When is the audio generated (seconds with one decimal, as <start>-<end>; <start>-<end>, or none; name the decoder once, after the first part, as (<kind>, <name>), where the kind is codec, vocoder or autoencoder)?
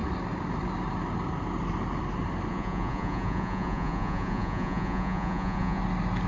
2.5-5.8 (vocoder, Vocos)